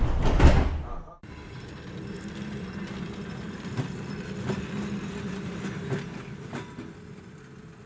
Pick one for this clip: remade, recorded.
recorded